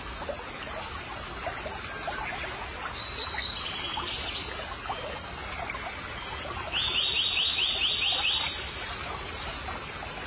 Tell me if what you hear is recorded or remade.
recorded